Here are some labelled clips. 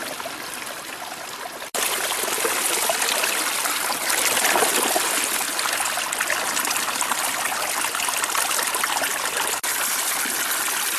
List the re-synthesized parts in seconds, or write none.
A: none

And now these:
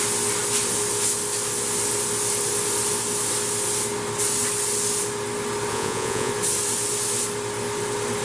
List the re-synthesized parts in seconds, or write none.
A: 5.7-6.3 (vocoder, Vocos)